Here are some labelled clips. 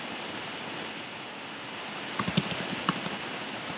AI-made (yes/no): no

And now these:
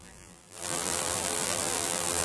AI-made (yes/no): yes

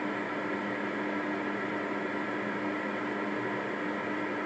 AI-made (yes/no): no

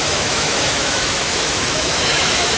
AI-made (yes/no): yes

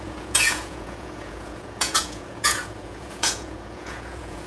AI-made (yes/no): yes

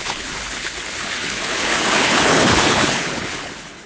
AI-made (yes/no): yes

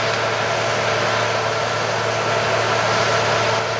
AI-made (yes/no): no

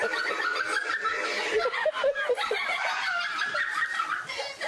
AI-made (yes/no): no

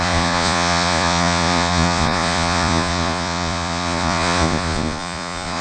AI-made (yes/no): yes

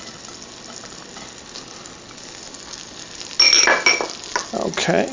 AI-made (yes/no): no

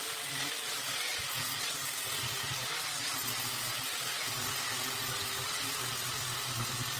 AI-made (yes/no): no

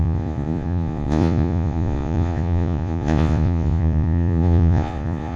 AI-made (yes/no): yes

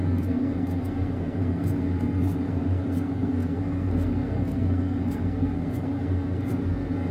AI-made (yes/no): yes